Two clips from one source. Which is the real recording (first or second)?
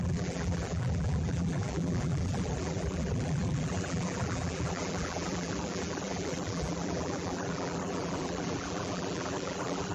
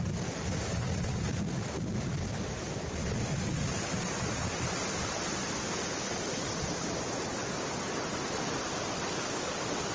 second